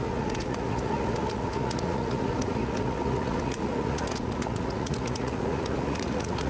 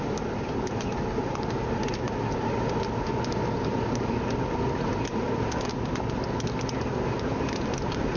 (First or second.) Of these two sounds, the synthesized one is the first